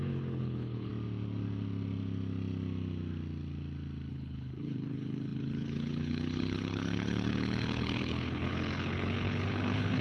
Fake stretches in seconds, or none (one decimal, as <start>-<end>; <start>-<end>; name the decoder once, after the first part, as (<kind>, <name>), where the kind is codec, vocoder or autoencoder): 0.0-0.9 (codec, HILCodec); 4.1-10.0